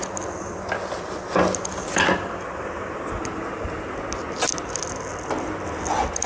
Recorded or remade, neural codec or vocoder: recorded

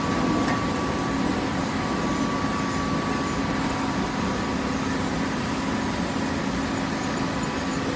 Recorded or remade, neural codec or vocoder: recorded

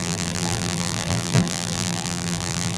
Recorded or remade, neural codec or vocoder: remade, vocoder, BigVGAN v2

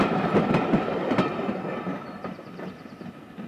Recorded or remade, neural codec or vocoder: remade, vocoder, BigVGAN v2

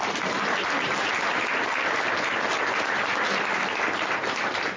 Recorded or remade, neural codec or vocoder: recorded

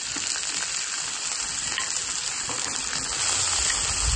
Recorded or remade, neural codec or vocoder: recorded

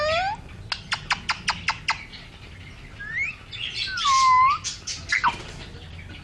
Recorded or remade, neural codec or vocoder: recorded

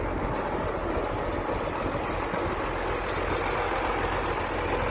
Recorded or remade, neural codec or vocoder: recorded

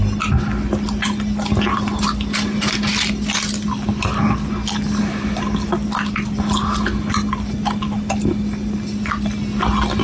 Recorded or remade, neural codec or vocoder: recorded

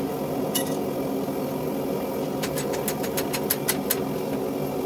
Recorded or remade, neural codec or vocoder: recorded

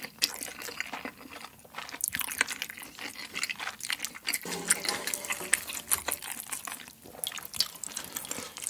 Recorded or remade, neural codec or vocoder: recorded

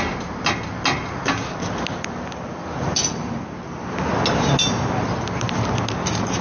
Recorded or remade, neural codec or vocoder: recorded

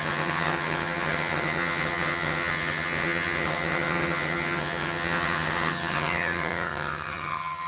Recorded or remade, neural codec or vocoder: remade, vocoder, HiFi-GAN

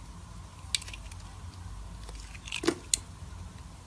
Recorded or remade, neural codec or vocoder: recorded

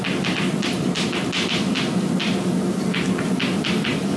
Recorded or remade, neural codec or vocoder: recorded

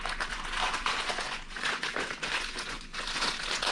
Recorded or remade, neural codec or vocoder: remade, vocoder, Vocos